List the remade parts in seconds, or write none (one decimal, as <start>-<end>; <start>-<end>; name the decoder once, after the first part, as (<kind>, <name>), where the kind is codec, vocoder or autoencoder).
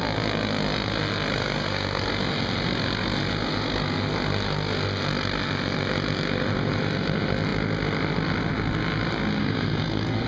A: 1.3-2.0 (codec, SNAC); 9.4-10.3